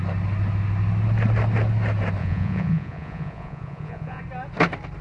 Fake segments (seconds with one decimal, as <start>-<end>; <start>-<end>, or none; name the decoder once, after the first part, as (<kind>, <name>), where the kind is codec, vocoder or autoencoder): 2.2-4.2 (vocoder, Vocos)